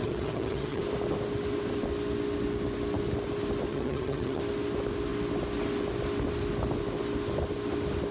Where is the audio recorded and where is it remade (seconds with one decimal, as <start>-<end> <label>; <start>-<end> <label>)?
0.0-0.8 remade; 0.8-3.7 recorded; 3.7-4.4 remade; 4.4-8.1 recorded